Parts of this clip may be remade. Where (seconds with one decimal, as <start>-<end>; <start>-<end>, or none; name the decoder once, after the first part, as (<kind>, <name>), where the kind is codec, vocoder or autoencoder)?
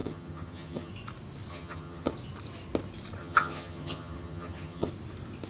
0.0-0.9 (vocoder, HiFi-GAN); 1.5-2.1; 3.2-4.9